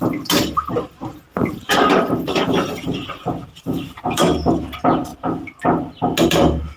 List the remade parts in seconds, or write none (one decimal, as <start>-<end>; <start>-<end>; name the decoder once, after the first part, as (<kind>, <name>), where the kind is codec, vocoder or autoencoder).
1.3-3.0 (vocoder, BigVGAN v2); 3.4-4.5